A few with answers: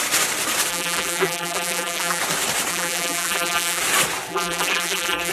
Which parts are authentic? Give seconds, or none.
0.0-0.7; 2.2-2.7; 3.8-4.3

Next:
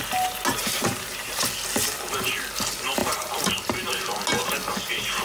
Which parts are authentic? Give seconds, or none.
0.0-0.6; 1.4-3.0; 3.9-5.2